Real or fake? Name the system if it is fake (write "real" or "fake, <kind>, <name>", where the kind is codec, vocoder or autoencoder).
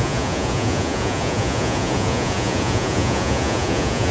fake, vocoder, Vocos